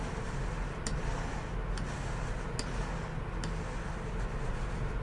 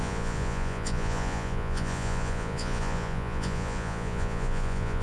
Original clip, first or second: first